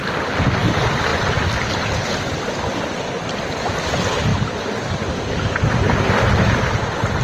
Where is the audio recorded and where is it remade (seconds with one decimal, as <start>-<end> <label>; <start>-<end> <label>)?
0.0-7.2 recorded